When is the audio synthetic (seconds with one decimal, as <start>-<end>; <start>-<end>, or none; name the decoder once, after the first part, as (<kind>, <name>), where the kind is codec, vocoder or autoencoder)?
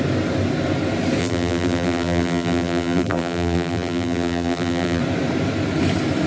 1.2-5.0 (vocoder, BigVGAN v2)